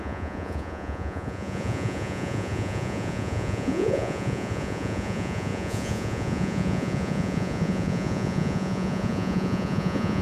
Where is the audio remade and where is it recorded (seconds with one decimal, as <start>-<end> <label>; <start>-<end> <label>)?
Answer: 0.0-10.2 remade